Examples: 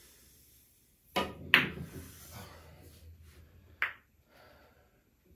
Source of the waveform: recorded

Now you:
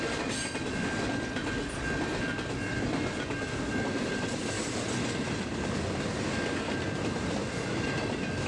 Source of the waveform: recorded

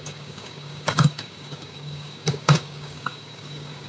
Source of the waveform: remade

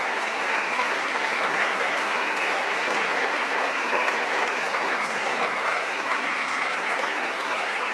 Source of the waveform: remade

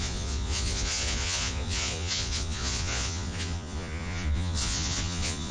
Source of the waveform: remade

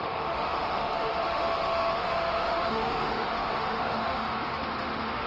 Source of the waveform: remade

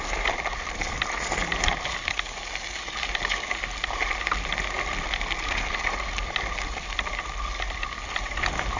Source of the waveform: recorded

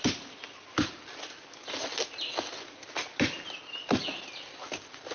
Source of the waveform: recorded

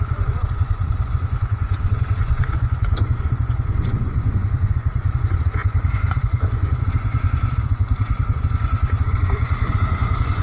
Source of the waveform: remade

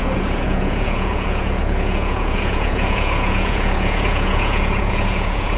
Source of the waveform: remade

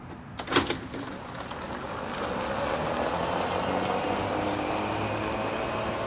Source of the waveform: recorded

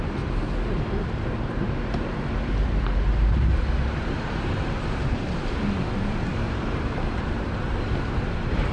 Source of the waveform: remade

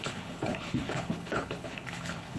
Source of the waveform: remade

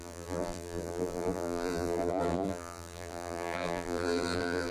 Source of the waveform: remade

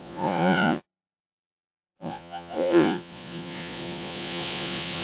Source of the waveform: remade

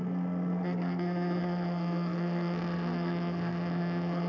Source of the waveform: remade